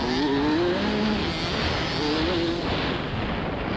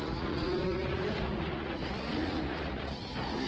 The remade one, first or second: second